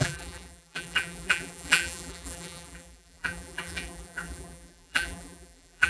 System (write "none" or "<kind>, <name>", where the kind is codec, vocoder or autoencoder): vocoder, BigVGAN v2